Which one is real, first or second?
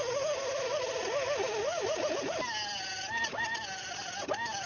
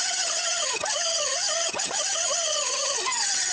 first